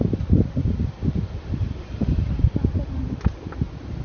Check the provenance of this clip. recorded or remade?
recorded